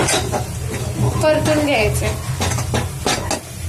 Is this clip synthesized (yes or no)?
no